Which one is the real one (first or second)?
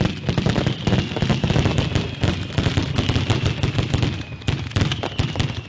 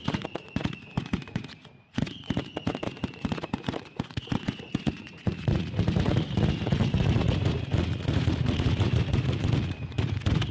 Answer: first